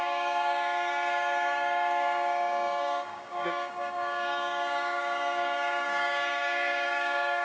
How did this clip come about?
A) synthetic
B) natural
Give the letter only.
A